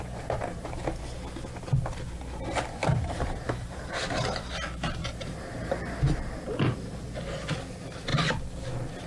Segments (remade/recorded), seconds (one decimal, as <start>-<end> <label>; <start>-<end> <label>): 0.0-2.8 recorded; 2.8-4.5 remade; 4.5-5.0 recorded; 5.0-6.1 remade; 6.1-9.1 recorded